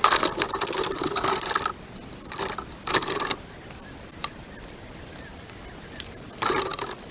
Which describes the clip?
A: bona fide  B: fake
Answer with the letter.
A